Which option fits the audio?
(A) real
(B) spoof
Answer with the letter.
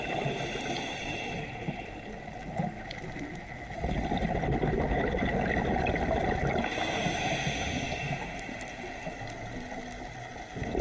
A